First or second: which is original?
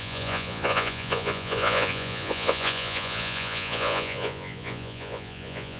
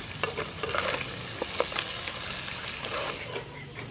second